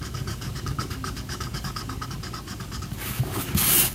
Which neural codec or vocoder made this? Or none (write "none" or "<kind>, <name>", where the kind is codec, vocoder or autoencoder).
codec, DAC